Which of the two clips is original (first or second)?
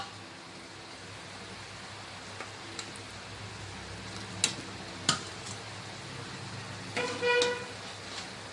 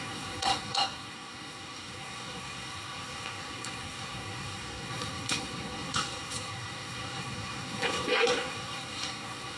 first